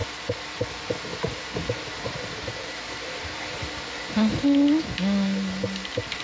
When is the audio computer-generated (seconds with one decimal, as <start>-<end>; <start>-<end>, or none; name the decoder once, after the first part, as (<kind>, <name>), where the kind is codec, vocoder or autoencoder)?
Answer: 0.0-0.6 (vocoder, BigVGAN v2); 1.1-4.8